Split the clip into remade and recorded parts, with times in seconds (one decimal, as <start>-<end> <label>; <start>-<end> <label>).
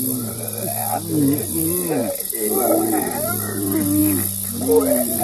0.0-5.2 recorded